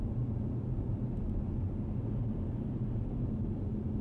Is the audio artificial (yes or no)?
no